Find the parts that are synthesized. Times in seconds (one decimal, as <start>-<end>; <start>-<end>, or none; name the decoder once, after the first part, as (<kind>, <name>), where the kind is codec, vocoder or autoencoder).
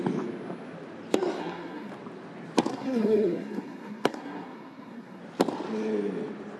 1.4-1.9 (codec, SNAC); 2.7-5.2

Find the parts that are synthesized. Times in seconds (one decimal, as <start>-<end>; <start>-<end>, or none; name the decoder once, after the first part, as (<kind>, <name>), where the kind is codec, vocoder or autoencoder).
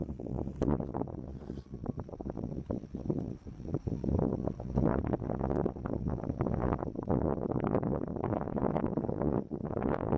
0.0-10.2 (vocoder, Vocos)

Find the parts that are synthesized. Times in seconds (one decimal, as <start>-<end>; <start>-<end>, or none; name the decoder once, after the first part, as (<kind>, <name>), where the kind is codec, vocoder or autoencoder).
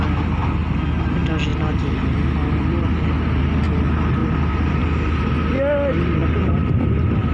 4.2-5.2 (vocoder, BigVGAN v2)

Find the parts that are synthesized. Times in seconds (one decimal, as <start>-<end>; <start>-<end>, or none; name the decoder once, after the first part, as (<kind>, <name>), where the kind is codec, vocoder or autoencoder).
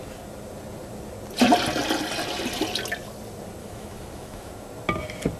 3.6-4.5 (autoencoder, DAC-VAE)